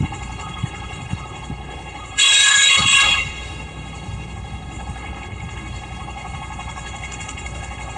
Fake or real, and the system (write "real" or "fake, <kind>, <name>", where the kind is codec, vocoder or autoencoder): fake, codec, HILCodec